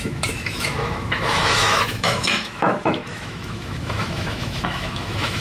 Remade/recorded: remade